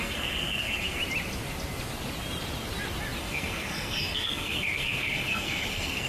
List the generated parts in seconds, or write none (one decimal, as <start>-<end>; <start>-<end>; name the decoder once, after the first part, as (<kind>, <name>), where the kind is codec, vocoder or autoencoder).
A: 0.0-1.0 (codec, SNAC); 3.2-6.1